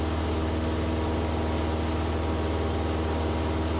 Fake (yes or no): no